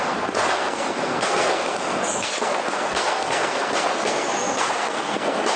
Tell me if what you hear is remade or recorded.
remade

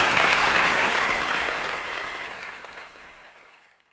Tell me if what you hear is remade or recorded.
remade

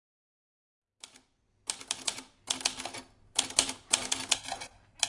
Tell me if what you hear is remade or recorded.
recorded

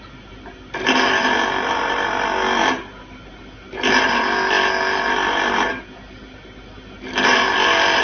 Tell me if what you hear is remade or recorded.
recorded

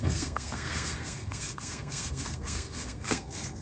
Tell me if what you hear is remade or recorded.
remade